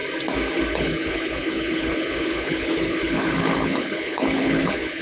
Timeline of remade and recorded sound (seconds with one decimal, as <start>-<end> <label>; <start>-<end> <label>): 0.0-0.7 recorded; 0.7-5.0 remade